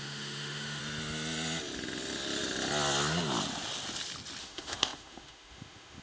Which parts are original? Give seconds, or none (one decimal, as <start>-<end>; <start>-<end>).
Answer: 0.8-4.4